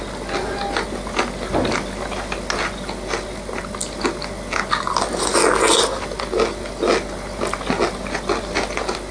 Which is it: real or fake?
real